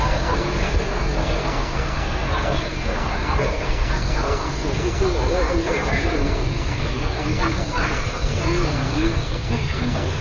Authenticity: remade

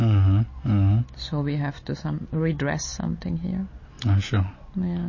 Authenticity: recorded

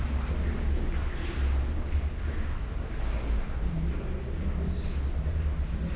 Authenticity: recorded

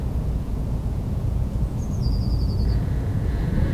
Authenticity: remade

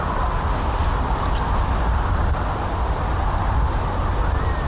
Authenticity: recorded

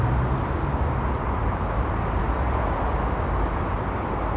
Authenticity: recorded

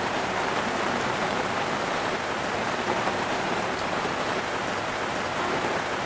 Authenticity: remade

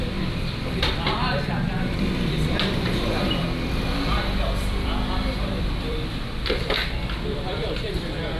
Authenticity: remade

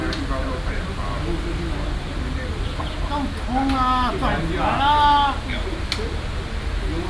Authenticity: recorded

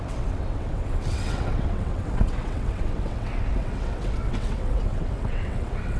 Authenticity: remade